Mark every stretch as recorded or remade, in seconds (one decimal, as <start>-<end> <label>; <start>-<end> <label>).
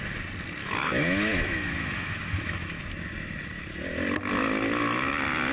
0.0-0.6 recorded; 0.6-2.8 remade; 2.8-5.5 recorded